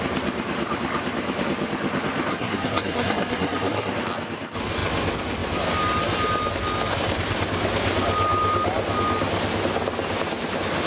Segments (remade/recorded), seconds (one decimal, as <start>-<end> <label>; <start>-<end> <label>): 0.0-2.3 recorded; 2.3-3.9 remade; 3.9-10.9 recorded